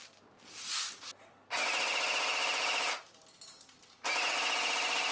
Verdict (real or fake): real